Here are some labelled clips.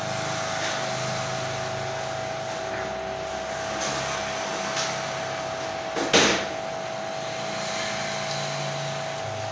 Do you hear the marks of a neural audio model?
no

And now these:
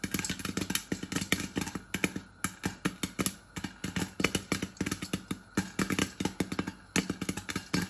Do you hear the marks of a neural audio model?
no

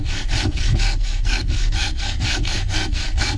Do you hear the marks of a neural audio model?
yes